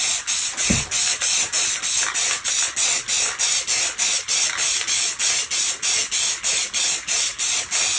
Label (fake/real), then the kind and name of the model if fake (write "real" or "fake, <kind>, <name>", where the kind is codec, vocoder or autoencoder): real